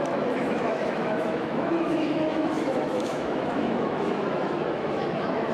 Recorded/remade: remade